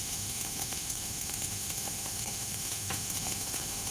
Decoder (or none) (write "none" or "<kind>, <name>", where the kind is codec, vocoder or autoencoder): autoencoder, DAC-VAE